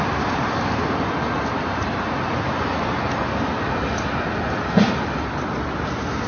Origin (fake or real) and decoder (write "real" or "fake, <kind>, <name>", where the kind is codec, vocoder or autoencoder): real